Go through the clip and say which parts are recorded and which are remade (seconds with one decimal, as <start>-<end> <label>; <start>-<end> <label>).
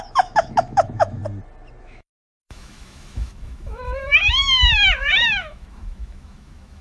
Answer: 0.0-1.2 remade; 1.2-1.8 recorded; 1.8-6.8 remade